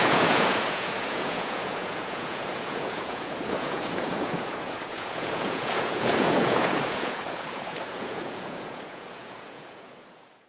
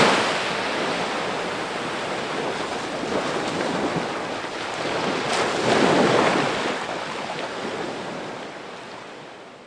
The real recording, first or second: second